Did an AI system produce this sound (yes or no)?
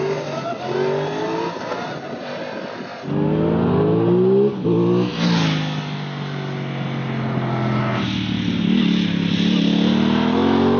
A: no